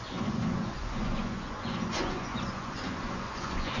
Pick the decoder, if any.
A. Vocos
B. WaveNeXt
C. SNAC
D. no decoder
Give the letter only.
A